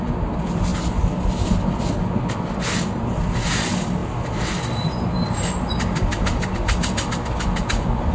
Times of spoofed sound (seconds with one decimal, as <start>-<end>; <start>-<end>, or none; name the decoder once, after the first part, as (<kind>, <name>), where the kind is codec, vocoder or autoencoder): none